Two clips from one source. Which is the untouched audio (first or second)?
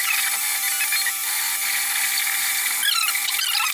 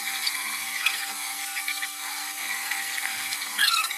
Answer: first